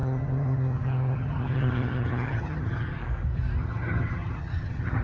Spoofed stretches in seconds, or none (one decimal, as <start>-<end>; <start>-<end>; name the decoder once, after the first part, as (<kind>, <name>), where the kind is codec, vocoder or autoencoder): 0.0-3.0 (vocoder, HiFi-GAN); 3.6-5.0